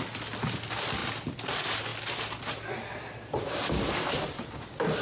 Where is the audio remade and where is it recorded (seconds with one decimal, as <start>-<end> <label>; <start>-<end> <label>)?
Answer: 0.0-1.9 recorded; 1.9-3.9 remade; 3.9-5.0 recorded